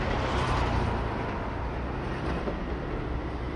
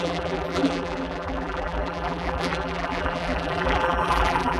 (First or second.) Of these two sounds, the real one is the first